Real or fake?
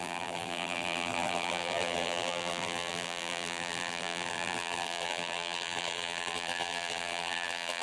fake